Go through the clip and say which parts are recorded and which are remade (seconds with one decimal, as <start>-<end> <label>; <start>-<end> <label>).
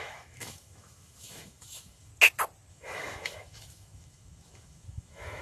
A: 0.0-2.1 remade; 2.1-2.7 recorded; 2.7-5.4 remade